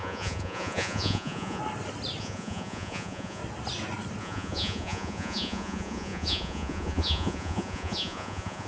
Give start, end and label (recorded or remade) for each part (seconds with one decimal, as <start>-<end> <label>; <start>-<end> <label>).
0.0-1.6 remade; 1.6-2.2 recorded; 2.2-3.4 remade; 3.4-4.2 recorded; 4.2-8.7 remade